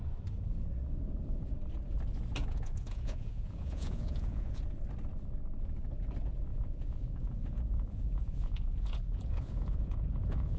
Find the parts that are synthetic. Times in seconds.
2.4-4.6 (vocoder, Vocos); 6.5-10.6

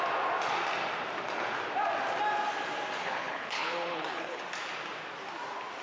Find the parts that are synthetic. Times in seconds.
3.0-4.4 (codec, HILCodec)